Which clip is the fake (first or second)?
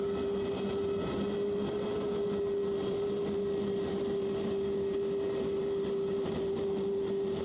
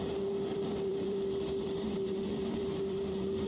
second